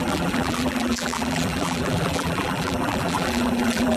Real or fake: fake